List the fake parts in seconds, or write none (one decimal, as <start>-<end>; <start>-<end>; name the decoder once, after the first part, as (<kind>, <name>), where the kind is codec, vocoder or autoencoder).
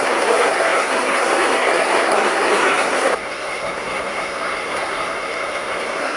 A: 0.0-6.2 (codec, SNAC)